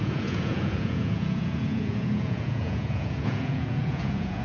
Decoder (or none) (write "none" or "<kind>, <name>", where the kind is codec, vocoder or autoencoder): vocoder, Vocos